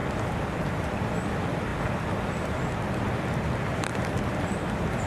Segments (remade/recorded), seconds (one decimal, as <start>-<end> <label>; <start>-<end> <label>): 0.0-0.5 remade; 0.5-1.7 recorded; 1.7-5.1 remade